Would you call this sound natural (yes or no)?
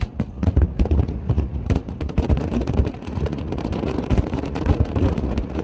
no